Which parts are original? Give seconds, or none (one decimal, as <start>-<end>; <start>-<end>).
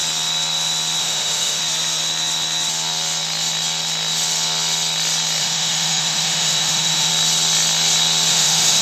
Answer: 0.0-1.0; 1.6-5.4; 7.1-8.3